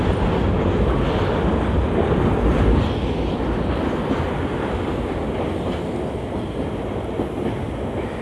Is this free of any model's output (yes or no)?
yes